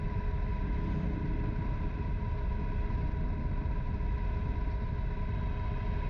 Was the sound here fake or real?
real